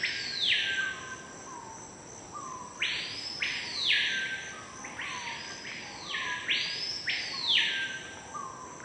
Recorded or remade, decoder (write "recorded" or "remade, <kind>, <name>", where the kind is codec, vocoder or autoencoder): recorded